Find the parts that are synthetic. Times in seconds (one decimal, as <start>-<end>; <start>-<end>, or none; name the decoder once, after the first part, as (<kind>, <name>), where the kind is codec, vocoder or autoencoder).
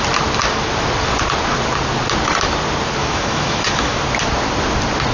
3.0-4.0 (autoencoder, DAC-VAE)